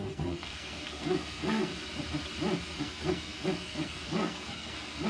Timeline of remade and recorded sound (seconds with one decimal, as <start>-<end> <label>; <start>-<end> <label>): 0.0-1.7 remade; 1.7-2.8 recorded; 2.8-5.1 remade